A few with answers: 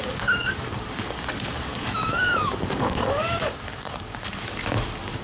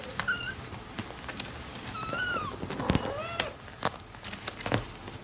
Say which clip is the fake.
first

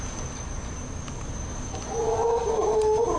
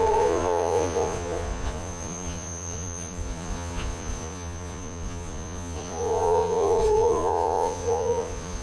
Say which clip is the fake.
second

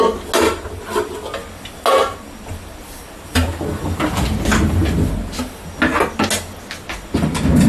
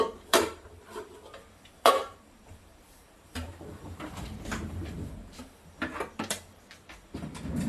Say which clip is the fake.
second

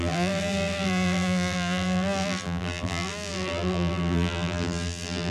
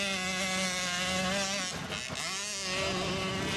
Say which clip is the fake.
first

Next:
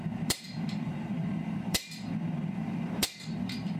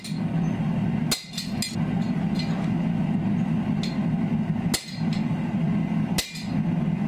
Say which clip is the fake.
first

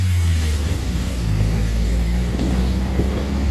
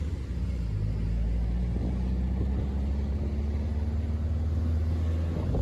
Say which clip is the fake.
first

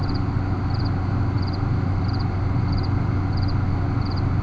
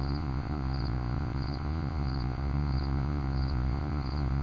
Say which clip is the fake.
second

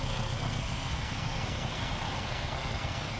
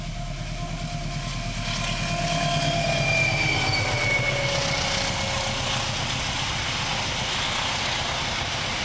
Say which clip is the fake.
first